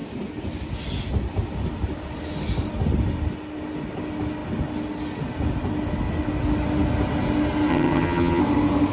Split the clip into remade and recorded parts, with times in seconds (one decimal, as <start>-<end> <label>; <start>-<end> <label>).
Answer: 0.0-7.7 recorded; 7.7-8.4 remade; 8.4-8.9 recorded